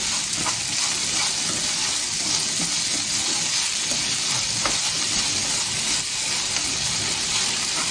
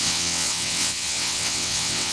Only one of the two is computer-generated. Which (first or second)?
second